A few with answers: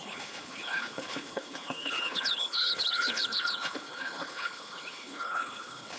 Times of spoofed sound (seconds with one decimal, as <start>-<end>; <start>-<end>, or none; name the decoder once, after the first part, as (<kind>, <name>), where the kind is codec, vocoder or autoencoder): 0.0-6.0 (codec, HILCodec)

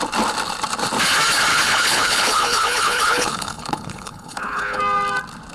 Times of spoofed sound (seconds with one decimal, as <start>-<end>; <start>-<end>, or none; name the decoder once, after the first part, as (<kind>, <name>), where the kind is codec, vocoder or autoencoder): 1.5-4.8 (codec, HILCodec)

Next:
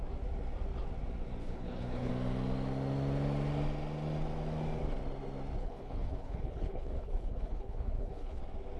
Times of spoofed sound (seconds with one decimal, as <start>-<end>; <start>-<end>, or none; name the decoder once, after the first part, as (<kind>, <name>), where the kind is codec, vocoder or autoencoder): 1.4-2.1 (codec, HILCodec); 5.6-8.4

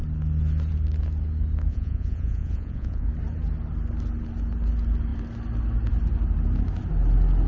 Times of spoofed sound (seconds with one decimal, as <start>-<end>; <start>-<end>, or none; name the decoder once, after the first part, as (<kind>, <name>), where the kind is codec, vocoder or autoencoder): 1.7-3.1 (vocoder, Vocos)